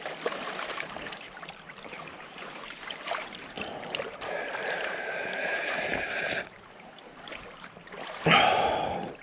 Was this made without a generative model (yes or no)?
no